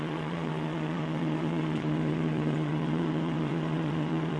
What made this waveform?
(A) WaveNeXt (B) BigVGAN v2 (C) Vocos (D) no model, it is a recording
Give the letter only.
C